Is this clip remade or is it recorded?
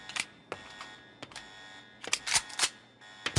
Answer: recorded